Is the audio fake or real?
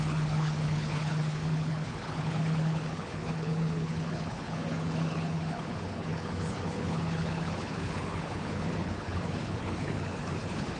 fake